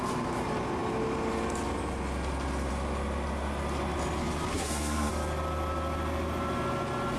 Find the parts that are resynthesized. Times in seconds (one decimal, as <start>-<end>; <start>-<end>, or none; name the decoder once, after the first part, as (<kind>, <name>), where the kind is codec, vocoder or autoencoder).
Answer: 4.5-5.1 (codec, SNAC)